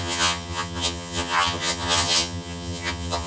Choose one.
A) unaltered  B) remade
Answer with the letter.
B